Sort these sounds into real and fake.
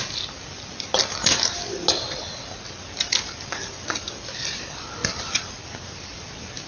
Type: real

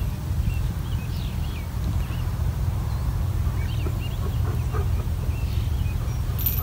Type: real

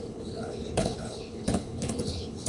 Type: fake